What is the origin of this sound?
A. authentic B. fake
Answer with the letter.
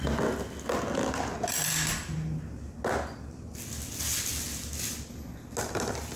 A